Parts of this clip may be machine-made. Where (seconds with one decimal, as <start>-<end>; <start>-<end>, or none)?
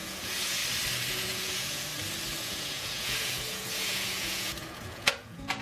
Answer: 0.0-0.6; 1.1-1.9; 2.4-5.6